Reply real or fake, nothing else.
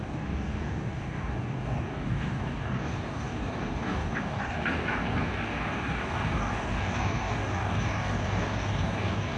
fake